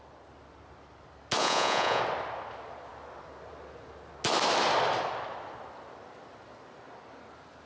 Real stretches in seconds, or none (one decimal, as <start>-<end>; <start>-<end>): 0.0-1.4; 2.0-7.7